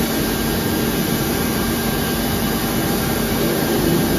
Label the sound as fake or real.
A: fake